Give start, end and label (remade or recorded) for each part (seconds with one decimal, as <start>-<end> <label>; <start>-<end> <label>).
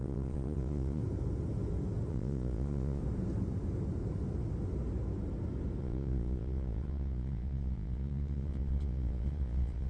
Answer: 0.0-1.0 remade; 1.0-2.1 recorded; 2.1-3.0 remade; 3.0-5.8 recorded; 5.8-9.9 remade